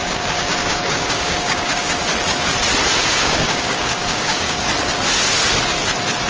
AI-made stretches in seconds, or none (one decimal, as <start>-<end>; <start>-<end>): 0.0-2.0; 2.9-4.7